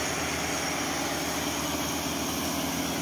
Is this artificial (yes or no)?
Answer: no